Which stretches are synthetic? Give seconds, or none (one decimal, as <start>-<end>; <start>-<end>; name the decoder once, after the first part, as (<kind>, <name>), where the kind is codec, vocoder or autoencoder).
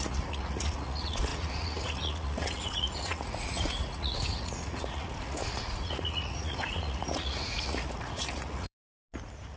0.0-8.9 (vocoder, Vocos)